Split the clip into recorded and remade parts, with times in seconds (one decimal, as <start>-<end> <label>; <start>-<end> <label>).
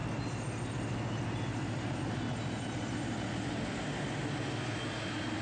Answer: 0.0-5.4 recorded